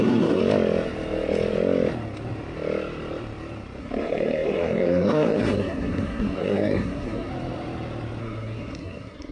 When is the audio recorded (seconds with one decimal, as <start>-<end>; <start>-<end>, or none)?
0.4-3.8; 7.3-8.2